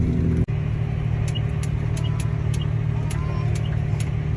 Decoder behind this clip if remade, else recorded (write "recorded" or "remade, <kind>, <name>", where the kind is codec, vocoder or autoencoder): recorded